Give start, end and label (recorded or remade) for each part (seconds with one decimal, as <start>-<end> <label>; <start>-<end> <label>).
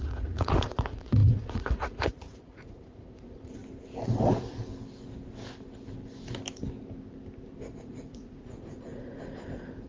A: 0.0-3.6 remade; 3.6-7.8 recorded; 7.8-9.9 remade